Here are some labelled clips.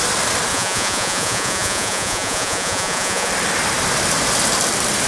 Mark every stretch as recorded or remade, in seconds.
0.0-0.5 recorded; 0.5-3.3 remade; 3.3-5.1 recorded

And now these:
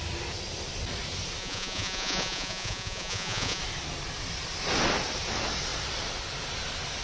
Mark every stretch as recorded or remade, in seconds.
0.0-1.4 recorded; 1.4-3.6 remade; 3.6-7.0 recorded

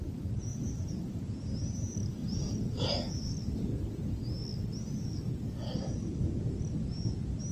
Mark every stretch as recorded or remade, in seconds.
0.0-0.5 recorded; 0.5-1.2 remade; 1.2-2.3 recorded; 2.3-3.2 remade; 3.2-7.5 recorded

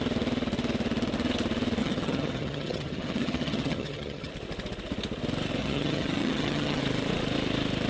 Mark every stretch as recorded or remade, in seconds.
0.0-1.8 recorded; 1.8-4.3 remade; 4.3-5.6 recorded; 5.6-6.8 remade; 6.8-7.9 recorded